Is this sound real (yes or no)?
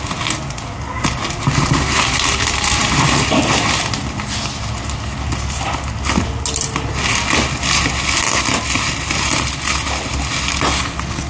yes